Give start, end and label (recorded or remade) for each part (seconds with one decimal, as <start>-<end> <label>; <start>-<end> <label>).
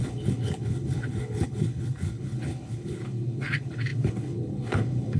0.0-5.2 remade